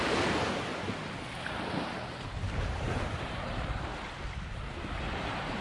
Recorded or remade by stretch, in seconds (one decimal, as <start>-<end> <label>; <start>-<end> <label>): 0.0-0.7 remade; 0.7-1.8 recorded; 1.8-3.9 remade; 3.9-5.0 recorded; 5.0-5.6 remade